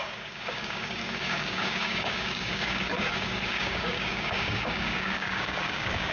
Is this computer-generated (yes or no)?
yes